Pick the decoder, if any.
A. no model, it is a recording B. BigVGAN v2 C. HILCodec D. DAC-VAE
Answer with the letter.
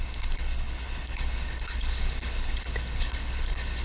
C